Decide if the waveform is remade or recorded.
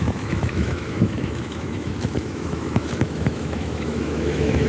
remade